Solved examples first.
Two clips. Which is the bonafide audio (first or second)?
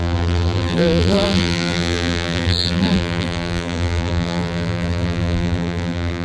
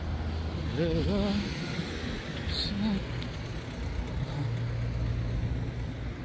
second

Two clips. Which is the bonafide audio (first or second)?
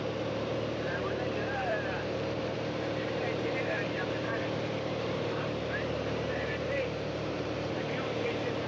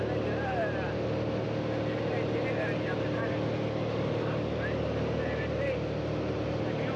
second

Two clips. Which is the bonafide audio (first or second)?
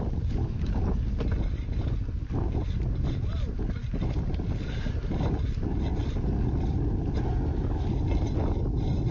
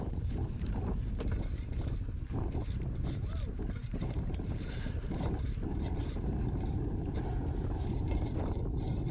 first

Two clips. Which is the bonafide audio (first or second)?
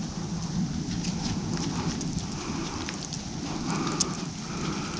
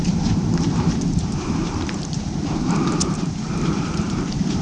first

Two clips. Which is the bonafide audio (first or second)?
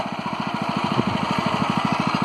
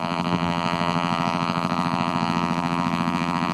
first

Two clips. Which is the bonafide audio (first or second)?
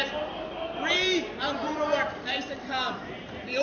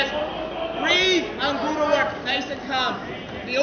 second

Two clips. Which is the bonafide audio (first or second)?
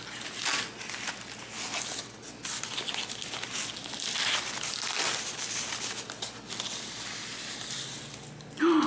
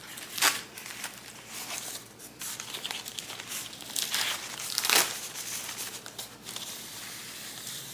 first